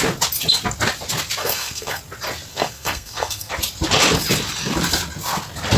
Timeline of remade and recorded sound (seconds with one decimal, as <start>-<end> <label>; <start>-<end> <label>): 0.0-1.4 recorded; 1.4-2.0 remade; 2.0-2.5 recorded; 2.5-3.5 remade; 3.5-5.8 recorded